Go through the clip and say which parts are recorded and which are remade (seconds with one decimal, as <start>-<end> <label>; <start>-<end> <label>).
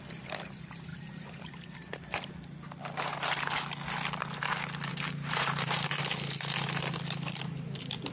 0.0-0.9 recorded; 0.9-2.3 remade; 2.3-4.9 recorded; 4.9-6.0 remade; 6.0-8.1 recorded